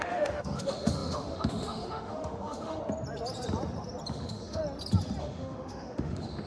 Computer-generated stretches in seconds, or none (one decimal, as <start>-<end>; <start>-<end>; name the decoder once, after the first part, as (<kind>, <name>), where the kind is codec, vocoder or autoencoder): 0.0-2.8 (autoencoder, DAC-VAE); 4.1-4.6; 5.2-6.5